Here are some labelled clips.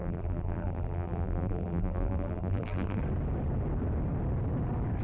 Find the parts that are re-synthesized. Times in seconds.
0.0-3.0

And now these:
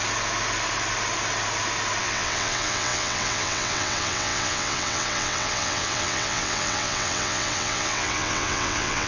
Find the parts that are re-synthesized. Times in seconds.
2.0-9.1

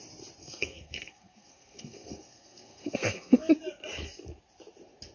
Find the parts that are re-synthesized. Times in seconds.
0.4-3.5